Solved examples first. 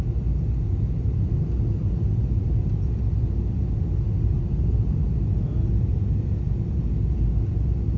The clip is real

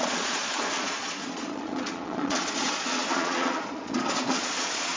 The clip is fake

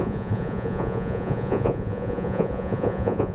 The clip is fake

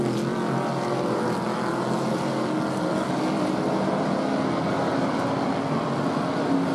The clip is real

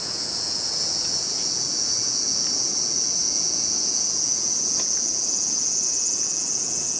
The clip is fake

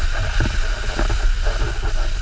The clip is real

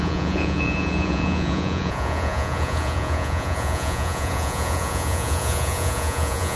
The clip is fake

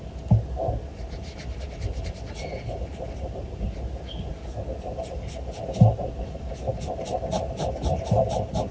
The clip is real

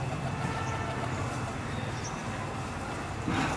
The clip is real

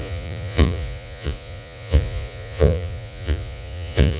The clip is fake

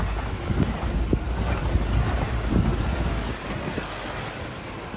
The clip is real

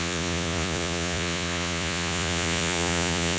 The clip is fake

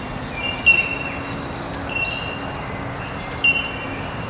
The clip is real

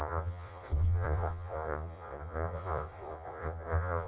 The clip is fake